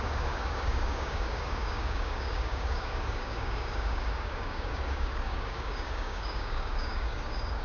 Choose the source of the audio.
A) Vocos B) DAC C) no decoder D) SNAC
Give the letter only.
B